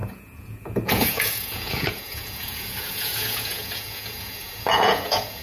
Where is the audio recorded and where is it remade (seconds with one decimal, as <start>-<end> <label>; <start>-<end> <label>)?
0.0-5.4 remade